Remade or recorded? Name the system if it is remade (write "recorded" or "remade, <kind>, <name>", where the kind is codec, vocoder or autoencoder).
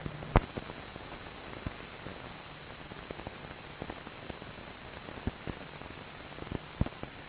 recorded